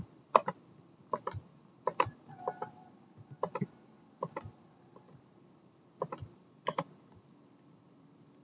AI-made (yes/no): yes